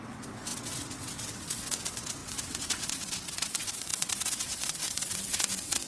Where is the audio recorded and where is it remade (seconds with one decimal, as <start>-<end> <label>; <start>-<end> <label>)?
0.0-5.9 remade